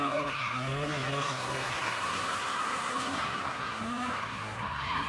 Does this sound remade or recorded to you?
remade